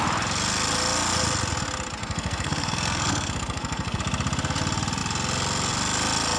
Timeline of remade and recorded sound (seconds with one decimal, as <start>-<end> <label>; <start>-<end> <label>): 0.0-2.0 recorded; 2.0-4.0 remade; 4.0-6.4 recorded